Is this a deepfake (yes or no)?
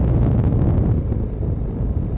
no